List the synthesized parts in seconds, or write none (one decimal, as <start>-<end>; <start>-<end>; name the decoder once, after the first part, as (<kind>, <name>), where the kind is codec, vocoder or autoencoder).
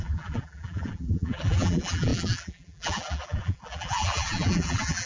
0.0-5.1 (vocoder, BigVGAN v2)